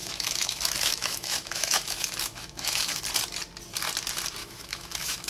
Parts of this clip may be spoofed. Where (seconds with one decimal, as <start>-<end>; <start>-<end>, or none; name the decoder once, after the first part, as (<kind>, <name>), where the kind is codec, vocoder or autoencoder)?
0.0-3.0 (autoencoder, DAC-VAE); 4.4-5.3